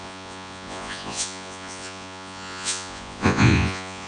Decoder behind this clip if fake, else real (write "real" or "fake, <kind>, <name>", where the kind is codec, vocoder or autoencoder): fake, vocoder, Vocos